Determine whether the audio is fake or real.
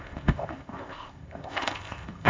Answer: fake